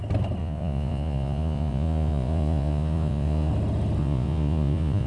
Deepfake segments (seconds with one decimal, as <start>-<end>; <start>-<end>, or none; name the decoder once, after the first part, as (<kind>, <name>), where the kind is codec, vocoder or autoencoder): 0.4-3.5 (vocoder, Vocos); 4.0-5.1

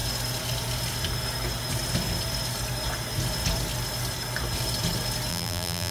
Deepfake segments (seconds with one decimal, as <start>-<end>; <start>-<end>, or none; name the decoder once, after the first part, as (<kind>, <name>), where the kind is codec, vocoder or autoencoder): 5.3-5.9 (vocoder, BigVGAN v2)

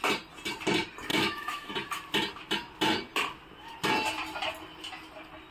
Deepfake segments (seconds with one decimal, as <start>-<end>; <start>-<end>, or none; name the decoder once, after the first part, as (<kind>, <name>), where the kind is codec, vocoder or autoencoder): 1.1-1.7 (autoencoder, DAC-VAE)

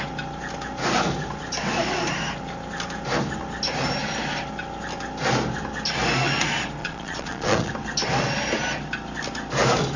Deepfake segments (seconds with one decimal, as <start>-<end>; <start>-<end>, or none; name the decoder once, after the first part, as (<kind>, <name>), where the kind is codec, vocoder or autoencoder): 6.8-7.7 (vocoder, Vocos)

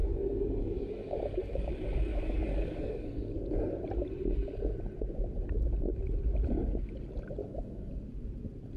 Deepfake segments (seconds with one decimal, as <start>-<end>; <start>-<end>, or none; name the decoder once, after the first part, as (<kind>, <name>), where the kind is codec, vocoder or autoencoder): 0.0-1.7 (codec, DAC); 2.1-3.4; 7.4-7.9

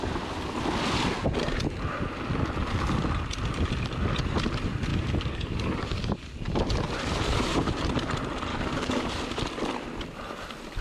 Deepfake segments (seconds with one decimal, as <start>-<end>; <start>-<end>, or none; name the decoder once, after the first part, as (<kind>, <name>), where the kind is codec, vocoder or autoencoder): 4.9-6.2 (codec, DAC); 8.5-9.1

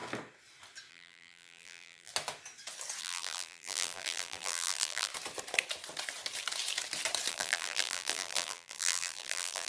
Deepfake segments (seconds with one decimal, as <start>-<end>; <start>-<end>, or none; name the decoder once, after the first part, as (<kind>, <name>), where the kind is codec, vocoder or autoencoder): 0.9-2.1 (vocoder, BigVGAN v2); 3.0-5.1; 7.3-9.7